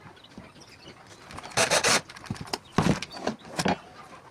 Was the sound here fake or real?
real